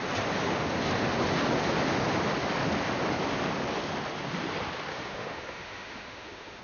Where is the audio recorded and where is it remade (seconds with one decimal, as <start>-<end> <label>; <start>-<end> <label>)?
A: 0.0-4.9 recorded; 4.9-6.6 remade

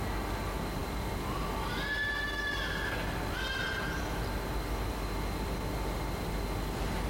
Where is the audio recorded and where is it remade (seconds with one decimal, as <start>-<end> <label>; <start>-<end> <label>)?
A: 0.0-7.1 recorded

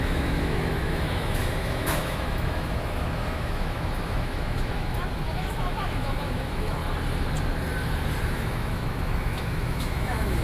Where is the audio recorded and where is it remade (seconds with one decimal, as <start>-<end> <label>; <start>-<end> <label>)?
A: 0.0-6.8 remade; 6.8-8.2 recorded; 8.2-10.4 remade

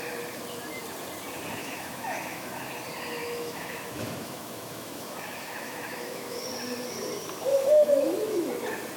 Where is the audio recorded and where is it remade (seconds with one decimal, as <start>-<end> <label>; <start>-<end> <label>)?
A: 0.0-1.6 recorded; 1.6-2.7 remade; 2.7-3.2 recorded; 3.2-6.4 remade; 6.4-7.5 recorded; 7.5-8.5 remade; 8.5-9.0 recorded

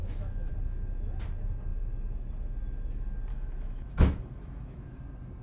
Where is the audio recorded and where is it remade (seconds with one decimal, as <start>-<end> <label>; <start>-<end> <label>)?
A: 0.0-0.5 remade; 0.5-3.3 recorded; 3.3-5.0 remade; 5.0-5.4 recorded

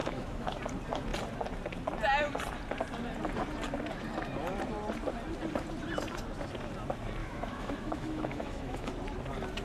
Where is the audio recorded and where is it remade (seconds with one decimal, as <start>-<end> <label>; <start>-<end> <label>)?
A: 0.0-0.6 remade; 0.6-7.2 recorded; 7.2-8.9 remade; 8.9-9.6 recorded